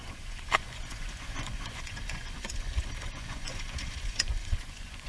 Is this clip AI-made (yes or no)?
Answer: yes